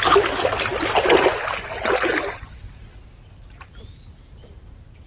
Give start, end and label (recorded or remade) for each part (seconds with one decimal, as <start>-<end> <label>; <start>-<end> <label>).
0.0-5.1 recorded